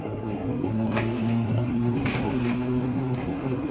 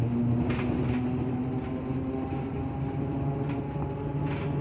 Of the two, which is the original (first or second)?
second